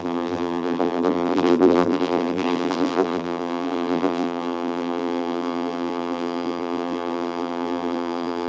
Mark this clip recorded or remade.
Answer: remade